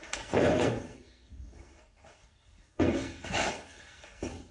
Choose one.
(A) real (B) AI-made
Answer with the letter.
B